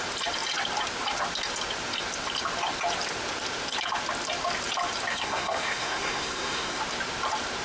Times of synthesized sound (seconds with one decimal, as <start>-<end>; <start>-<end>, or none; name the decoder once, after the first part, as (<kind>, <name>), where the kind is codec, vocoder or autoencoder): 5.1-6.8 (codec, SNAC)